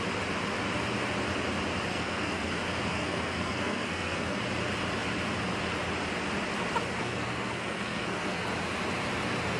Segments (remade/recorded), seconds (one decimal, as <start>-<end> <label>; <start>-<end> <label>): 0.0-1.9 recorded; 1.9-2.5 remade; 2.5-2.9 recorded; 2.9-4.4 remade; 4.4-7.0 recorded; 7.0-8.5 remade; 8.5-9.6 recorded

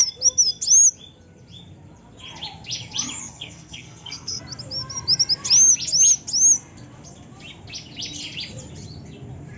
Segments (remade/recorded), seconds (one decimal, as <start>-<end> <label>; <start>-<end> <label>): 0.0-3.2 recorded; 3.2-4.4 remade; 4.4-9.6 recorded

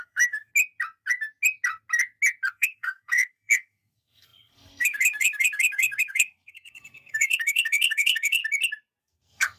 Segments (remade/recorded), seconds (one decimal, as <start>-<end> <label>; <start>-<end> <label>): 0.0-0.5 remade; 0.5-2.5 recorded; 2.5-8.4 remade; 8.4-9.0 recorded; 9.0-9.6 remade

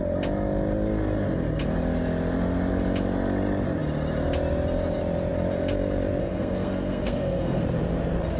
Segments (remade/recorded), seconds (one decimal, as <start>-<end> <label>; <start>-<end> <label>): 0.0-6.2 recorded; 6.2-7.6 remade; 7.6-8.4 recorded

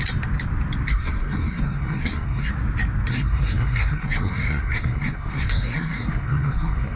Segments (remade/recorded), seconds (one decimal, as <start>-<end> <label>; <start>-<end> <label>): 0.0-0.9 recorded; 0.9-2.5 remade; 2.5-3.1 recorded; 3.1-7.0 remade